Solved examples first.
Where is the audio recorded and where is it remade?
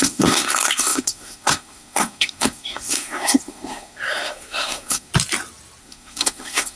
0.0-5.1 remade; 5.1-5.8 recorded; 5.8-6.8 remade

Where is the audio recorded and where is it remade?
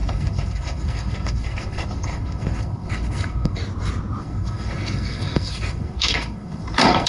0.0-3.6 remade; 3.6-4.2 recorded; 4.2-7.1 remade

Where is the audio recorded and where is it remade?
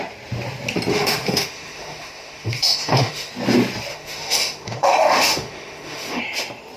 0.0-0.9 recorded; 0.9-3.3 remade; 3.3-3.9 recorded; 3.9-6.2 remade; 6.2-6.8 recorded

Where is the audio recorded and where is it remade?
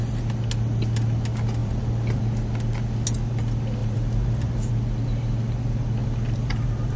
0.0-1.6 recorded; 1.6-2.2 remade; 2.2-3.8 recorded; 3.8-4.7 remade; 4.7-6.0 recorded; 6.0-7.0 remade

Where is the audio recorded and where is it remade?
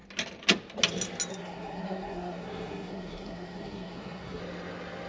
0.0-1.3 recorded; 1.3-4.4 remade; 4.4-5.1 recorded